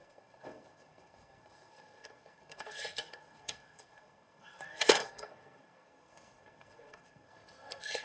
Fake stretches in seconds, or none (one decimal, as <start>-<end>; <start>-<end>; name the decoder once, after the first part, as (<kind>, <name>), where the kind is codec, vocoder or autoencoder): 0.0-8.0 (codec, SNAC)

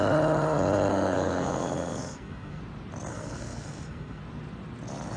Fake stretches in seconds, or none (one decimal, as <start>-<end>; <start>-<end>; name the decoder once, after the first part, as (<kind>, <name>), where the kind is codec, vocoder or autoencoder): 0.9-2.6 (codec, SNAC); 3.1-4.2

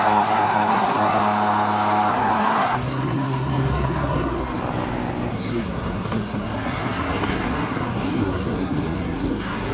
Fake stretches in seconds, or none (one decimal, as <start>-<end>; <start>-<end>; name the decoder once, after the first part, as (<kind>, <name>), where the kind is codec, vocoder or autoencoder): 0.0-1.2 (codec, SNAC); 2.1-4.6; 5.3-9.7

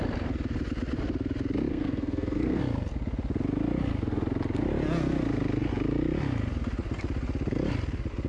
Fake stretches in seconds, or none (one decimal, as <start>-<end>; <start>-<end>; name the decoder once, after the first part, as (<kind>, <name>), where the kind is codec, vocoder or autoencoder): 1.7-2.6 (codec, SNAC)

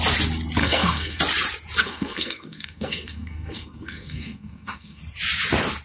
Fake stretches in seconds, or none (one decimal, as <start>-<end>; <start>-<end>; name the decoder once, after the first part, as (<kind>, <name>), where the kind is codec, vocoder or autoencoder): 0.6-1.2 (codec, SNAC); 1.8-5.0

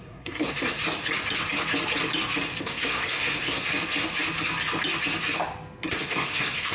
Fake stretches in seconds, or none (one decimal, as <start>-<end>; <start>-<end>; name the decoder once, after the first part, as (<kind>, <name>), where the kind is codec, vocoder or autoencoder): 0.0-0.8 (codec, SNAC); 2.6-3.7; 5.9-6.7